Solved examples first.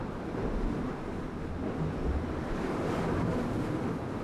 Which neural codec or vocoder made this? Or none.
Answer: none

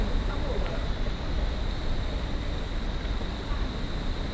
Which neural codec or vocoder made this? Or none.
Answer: none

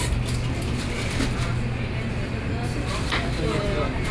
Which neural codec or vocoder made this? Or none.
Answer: none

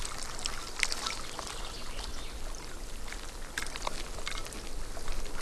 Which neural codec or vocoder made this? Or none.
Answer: none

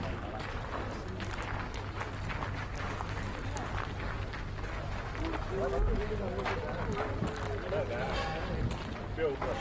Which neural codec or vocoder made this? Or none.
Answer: none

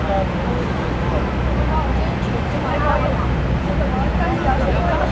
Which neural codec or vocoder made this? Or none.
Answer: none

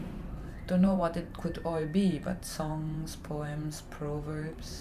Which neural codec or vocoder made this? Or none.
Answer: vocoder, BigVGAN v2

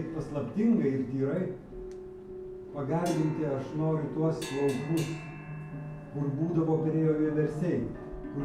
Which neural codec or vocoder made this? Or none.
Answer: none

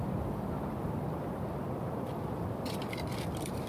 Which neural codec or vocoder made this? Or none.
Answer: none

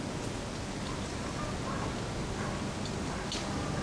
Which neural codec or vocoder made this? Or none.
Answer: none